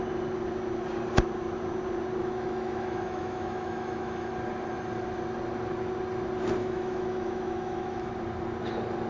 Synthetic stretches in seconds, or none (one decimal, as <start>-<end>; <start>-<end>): 2.2-4.3; 6.6-8.1